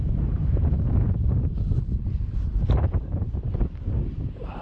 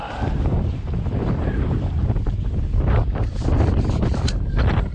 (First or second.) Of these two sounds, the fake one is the first